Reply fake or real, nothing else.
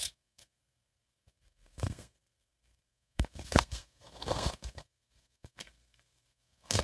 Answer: fake